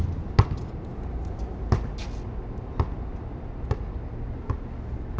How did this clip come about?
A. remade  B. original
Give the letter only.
B